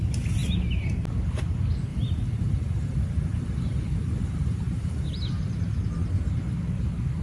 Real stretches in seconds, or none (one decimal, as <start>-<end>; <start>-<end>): 0.0-1.9; 5.2-7.2